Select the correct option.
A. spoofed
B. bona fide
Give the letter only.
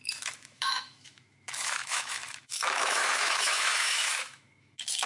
A